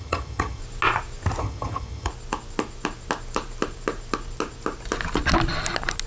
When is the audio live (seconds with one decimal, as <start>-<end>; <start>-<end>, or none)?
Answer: 0.6-1.4; 2.1-6.1